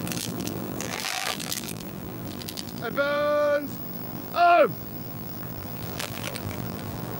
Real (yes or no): no